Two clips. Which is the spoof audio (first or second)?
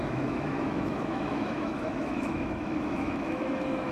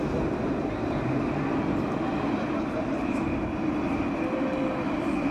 first